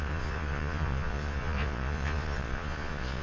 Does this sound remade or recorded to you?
remade